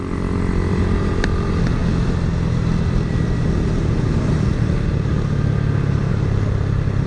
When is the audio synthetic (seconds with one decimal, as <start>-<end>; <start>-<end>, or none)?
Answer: none